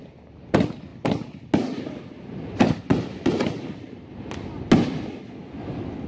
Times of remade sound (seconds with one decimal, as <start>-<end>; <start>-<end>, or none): none